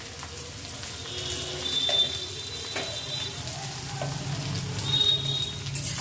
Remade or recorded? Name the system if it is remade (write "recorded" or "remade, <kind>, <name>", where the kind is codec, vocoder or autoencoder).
recorded